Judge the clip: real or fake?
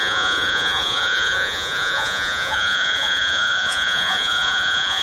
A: fake